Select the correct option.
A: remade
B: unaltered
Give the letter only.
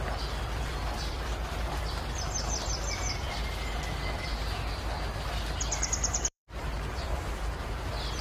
A